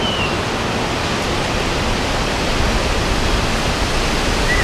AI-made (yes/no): no